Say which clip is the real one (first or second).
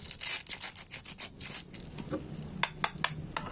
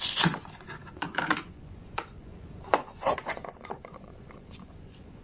first